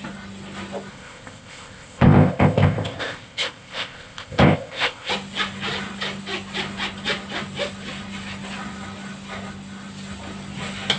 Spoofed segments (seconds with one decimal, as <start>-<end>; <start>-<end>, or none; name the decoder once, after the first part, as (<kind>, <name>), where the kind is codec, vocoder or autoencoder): 0.9-5.1 (codec, ZipCodec)